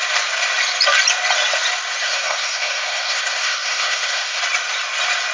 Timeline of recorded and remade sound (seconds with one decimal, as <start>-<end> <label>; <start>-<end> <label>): 0.0-2.0 recorded; 2.0-4.4 remade; 4.4-5.3 recorded